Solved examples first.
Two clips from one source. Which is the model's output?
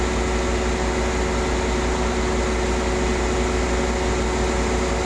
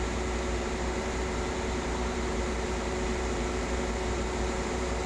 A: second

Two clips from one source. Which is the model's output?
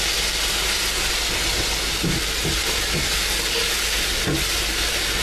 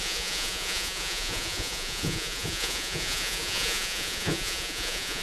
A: second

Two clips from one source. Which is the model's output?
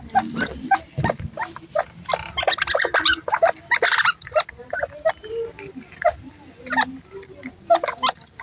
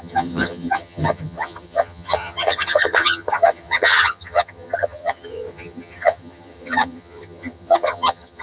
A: second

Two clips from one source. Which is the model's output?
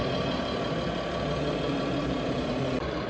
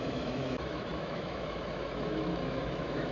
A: second